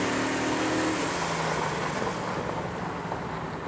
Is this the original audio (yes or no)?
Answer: yes